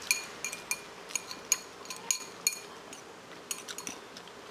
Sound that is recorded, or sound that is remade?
recorded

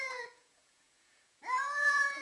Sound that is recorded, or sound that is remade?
remade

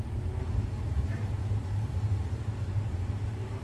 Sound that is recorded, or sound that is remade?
remade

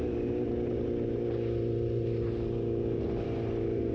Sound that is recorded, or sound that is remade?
recorded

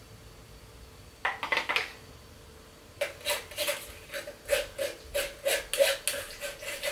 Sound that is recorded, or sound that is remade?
recorded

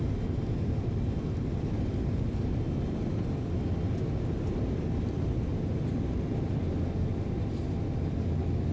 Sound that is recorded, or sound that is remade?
recorded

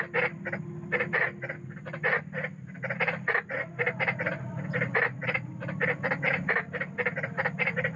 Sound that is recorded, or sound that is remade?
recorded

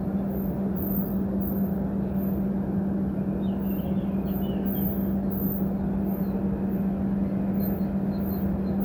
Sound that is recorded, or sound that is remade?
recorded